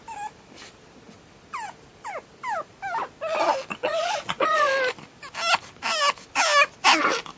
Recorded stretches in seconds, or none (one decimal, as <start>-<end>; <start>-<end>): 0.0-3.8; 4.7-7.4